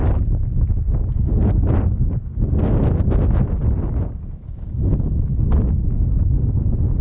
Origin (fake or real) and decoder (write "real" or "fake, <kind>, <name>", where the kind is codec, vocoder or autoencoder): real